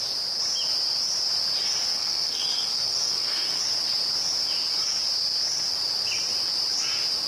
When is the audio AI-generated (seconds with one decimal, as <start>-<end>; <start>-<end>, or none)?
1.9-3.6